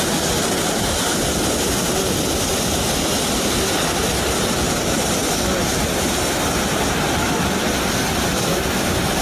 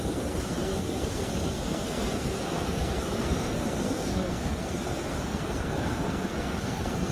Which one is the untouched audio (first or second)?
first